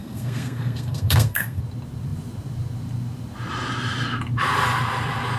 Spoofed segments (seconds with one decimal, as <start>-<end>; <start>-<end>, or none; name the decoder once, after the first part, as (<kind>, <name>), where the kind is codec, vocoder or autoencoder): 0.0-1.6 (codec, SNAC)